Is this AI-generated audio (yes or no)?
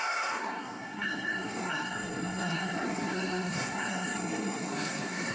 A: yes